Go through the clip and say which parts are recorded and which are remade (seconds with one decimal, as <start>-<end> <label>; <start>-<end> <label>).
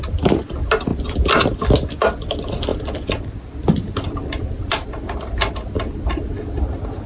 0.0-7.1 recorded